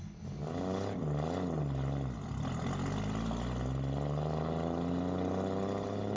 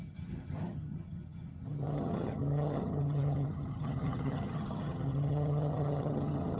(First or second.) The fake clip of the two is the second